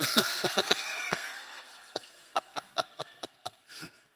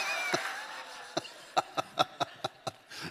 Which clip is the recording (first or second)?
second